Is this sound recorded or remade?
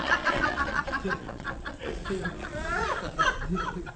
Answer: remade